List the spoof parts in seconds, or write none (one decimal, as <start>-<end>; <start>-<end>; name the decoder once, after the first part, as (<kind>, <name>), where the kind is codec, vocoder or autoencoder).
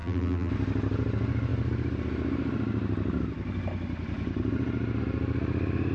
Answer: 0.0-0.5 (vocoder, BigVGAN v2)